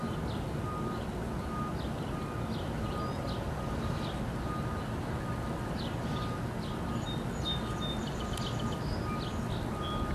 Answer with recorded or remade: recorded